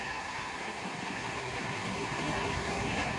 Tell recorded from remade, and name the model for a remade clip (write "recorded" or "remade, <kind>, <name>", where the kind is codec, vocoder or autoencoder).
remade, codec, SNAC